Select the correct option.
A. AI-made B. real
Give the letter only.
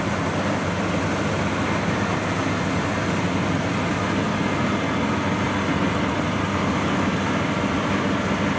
B